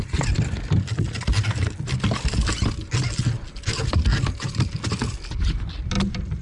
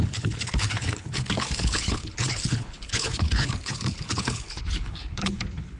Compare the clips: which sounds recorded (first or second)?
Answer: first